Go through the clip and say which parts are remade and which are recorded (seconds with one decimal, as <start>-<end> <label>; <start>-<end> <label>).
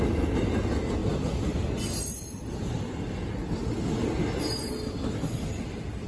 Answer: 0.0-6.1 recorded